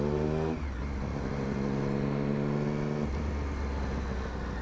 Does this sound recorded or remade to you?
recorded